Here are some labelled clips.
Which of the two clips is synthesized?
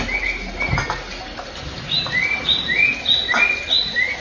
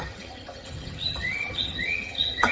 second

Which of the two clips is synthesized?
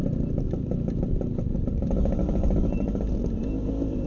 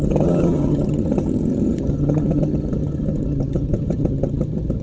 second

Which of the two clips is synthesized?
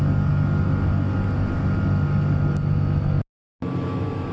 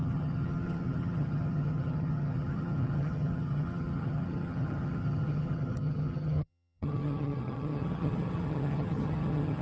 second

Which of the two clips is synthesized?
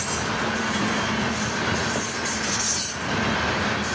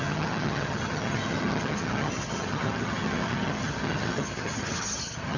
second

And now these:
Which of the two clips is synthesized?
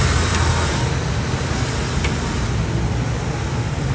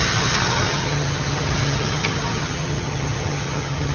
second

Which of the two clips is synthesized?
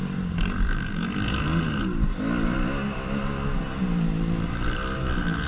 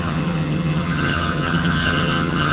second